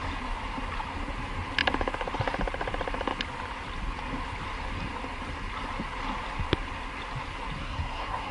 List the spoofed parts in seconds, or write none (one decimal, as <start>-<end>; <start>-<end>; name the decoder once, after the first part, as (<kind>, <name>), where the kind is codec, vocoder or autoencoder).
7.6-8.3 (codec, SNAC)